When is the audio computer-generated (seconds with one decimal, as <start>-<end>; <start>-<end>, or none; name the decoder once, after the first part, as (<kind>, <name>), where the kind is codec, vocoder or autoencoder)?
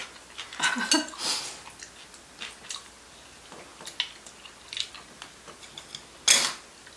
none